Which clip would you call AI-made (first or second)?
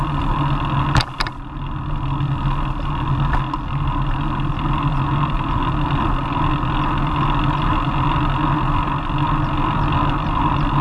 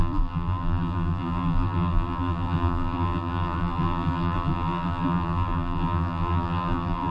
second